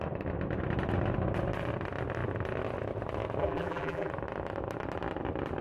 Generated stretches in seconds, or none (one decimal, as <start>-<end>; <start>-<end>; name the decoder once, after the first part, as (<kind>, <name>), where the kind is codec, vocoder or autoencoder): 3.4-4.1 (vocoder, BigVGAN v2)